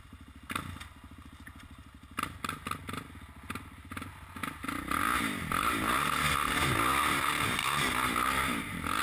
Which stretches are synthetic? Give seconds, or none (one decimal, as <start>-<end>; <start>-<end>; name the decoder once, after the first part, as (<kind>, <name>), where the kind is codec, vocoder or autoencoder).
7.6-9.0 (vocoder, BigVGAN v2)